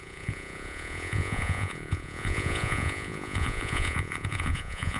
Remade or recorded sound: remade